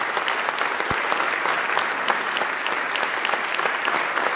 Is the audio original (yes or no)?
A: yes